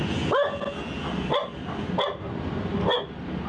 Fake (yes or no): no